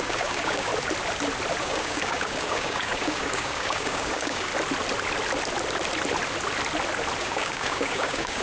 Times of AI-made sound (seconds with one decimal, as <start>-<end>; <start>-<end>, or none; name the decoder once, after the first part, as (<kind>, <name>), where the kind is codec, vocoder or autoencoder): 0.0-0.7 (codec, DAC); 1.6-4.5; 7.2-8.4